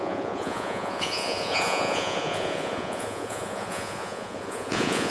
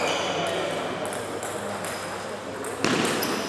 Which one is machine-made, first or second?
first